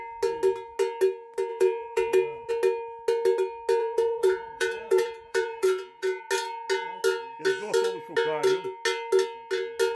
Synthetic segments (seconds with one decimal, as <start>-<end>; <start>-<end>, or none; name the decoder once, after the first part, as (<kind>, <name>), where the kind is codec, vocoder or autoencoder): 1.5-2.5 (vocoder, Vocos); 3.8-6.2